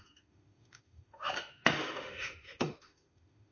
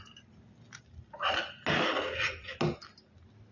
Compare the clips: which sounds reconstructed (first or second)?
first